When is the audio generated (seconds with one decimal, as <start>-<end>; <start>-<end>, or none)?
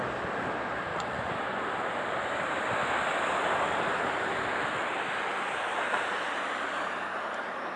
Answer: 0.9-1.4